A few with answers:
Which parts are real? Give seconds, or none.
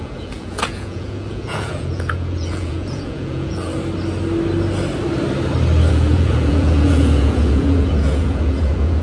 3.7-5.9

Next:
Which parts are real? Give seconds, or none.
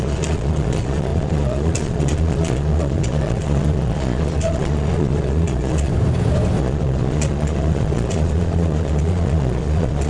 5.9-6.6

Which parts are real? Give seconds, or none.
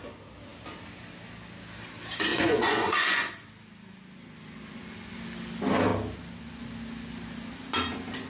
0.0-2.3; 3.3-8.3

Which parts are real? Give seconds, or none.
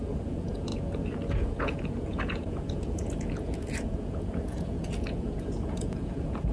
none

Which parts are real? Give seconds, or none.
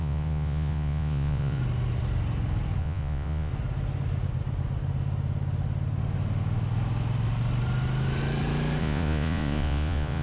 1.6-2.8; 3.5-8.8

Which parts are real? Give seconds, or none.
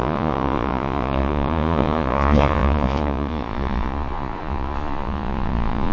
none